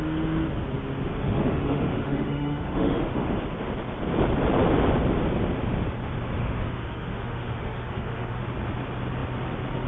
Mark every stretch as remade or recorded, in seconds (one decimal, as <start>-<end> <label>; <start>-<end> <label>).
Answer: 0.0-1.1 recorded; 1.1-3.4 remade; 3.4-6.4 recorded; 6.4-8.4 remade; 8.4-9.9 recorded